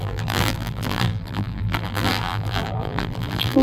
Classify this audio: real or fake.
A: fake